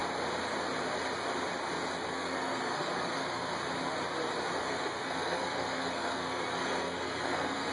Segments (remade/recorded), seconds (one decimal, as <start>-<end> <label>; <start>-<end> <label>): 0.0-2.1 recorded; 2.1-3.5 remade; 3.5-4.6 recorded; 4.6-7.7 remade